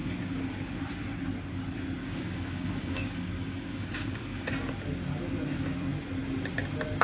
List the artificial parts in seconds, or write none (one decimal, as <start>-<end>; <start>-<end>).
2.0-4.5